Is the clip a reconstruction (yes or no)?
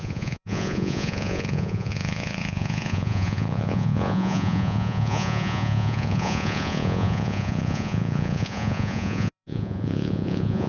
yes